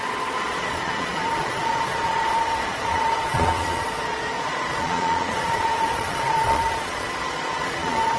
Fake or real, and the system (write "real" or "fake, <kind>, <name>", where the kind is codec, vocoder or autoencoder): fake, vocoder, Vocos